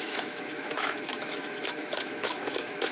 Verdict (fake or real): fake